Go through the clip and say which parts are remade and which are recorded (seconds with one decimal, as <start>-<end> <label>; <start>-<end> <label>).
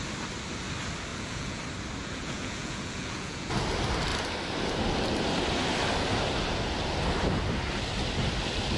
0.0-1.1 recorded; 1.1-1.6 remade; 1.6-2.0 recorded; 2.0-3.5 remade; 3.5-8.8 recorded